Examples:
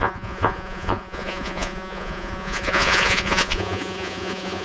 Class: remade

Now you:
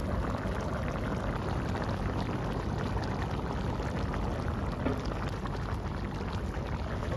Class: recorded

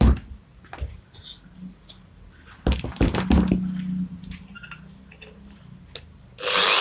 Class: recorded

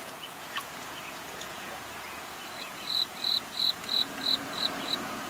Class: remade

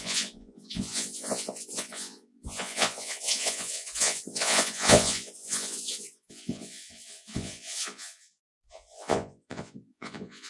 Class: remade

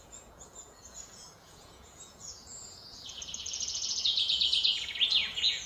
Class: remade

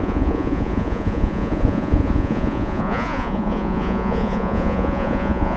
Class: remade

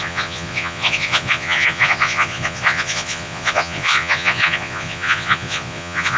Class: remade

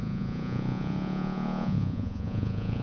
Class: remade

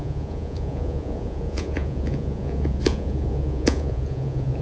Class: remade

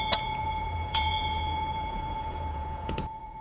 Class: remade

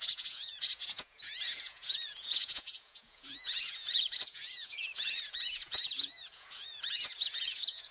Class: remade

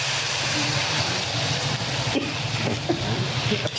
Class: recorded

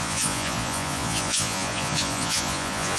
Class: remade